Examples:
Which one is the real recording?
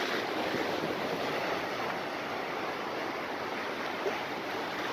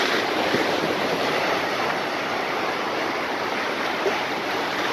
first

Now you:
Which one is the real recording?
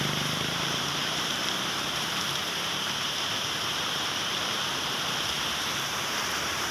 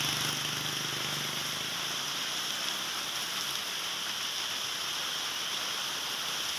second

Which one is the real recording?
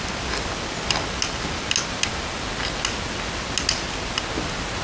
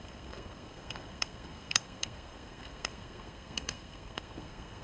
first